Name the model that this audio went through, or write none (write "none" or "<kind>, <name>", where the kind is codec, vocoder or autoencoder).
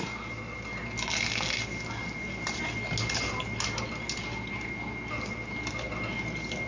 none